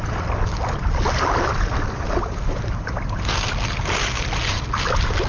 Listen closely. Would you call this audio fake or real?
real